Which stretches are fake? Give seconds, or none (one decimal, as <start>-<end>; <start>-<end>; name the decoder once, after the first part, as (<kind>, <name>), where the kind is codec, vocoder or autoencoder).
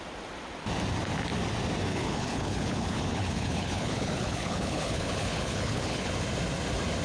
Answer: 1.9-6.1 (codec, HILCodec)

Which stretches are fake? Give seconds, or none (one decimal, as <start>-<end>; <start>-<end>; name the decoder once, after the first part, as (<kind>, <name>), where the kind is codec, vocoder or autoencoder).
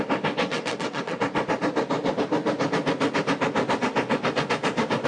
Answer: 0.5-1.2 (vocoder, WaveNeXt)